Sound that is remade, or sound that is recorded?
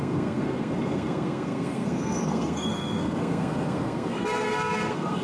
remade